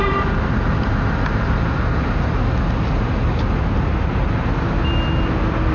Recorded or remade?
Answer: recorded